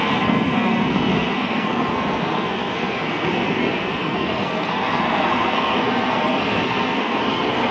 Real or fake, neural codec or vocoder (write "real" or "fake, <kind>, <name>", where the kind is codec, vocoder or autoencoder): fake, codec, SNAC